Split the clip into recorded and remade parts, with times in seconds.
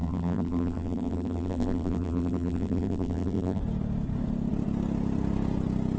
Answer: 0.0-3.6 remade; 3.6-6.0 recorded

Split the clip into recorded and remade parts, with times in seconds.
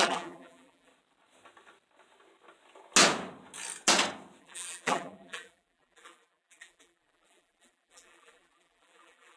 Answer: 0.0-0.9 remade; 0.9-4.4 recorded; 4.4-9.4 remade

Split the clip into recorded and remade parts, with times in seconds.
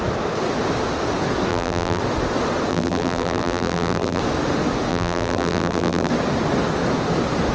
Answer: 0.0-1.5 recorded; 1.5-2.0 remade; 2.0-2.7 recorded; 2.7-4.2 remade; 4.2-4.9 recorded; 4.9-6.1 remade; 6.1-7.5 recorded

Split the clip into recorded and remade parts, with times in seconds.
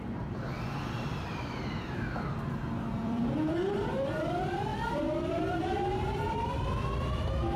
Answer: 0.0-7.6 remade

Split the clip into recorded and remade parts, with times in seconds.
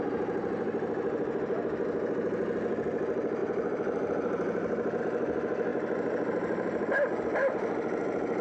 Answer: 0.0-3.4 recorded; 3.4-5.0 remade; 5.0-5.7 recorded; 5.7-7.2 remade; 7.2-8.4 recorded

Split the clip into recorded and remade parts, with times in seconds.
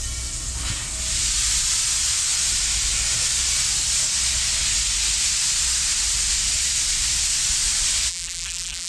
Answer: 0.0-8.1 recorded; 8.1-8.9 remade